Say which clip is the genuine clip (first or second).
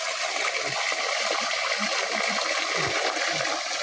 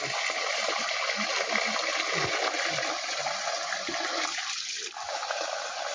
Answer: second